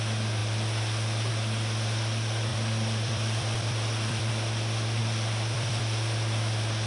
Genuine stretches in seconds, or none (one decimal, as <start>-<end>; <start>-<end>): 0.0-2.5; 4.3-5.0; 5.8-6.9